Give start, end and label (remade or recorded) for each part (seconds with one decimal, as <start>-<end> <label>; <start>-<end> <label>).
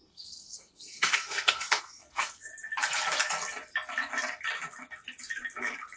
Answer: 0.0-2.5 remade; 2.5-6.0 recorded